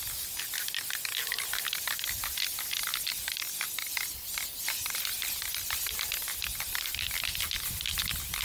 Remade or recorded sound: recorded